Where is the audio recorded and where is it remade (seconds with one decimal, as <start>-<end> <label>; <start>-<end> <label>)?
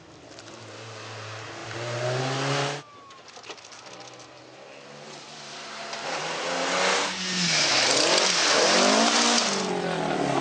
0.0-10.4 recorded